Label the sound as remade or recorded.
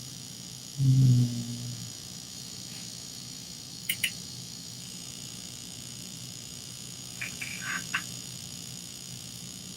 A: remade